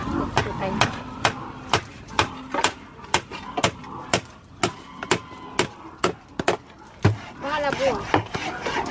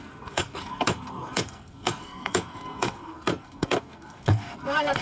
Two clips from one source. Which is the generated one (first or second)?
second